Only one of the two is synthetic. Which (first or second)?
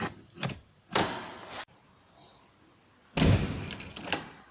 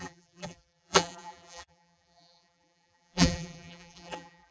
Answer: second